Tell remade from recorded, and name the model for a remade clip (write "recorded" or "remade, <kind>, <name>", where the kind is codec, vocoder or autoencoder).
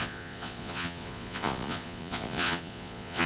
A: remade, vocoder, Vocos